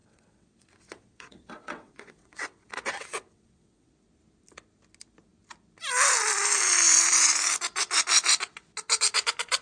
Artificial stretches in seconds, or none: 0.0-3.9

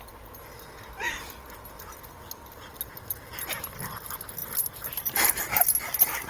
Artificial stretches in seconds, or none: none